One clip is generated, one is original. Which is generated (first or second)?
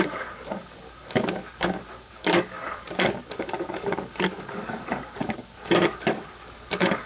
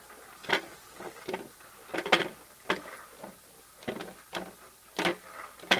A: first